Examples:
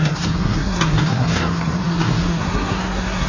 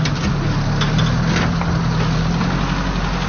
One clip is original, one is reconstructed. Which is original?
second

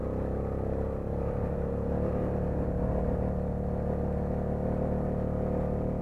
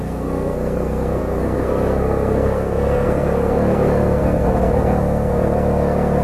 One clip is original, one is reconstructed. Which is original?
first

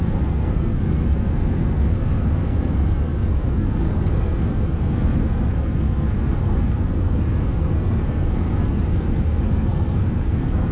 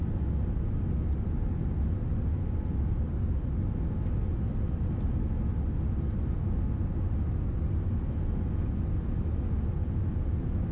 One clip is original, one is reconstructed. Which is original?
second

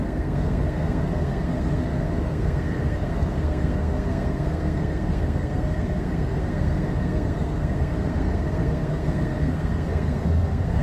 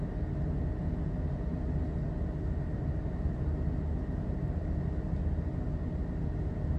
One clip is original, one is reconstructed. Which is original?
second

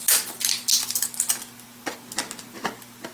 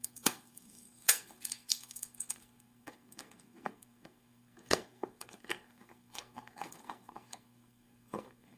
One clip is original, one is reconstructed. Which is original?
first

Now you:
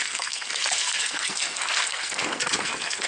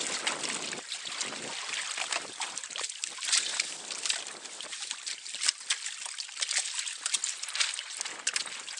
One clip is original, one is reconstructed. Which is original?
second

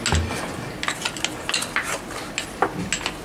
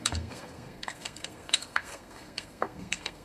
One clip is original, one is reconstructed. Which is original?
first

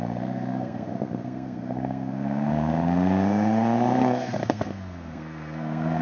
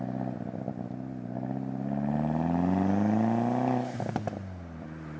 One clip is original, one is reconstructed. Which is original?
second